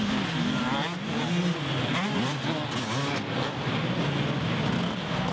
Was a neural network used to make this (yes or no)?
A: no